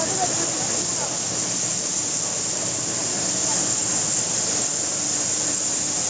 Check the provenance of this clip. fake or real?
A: real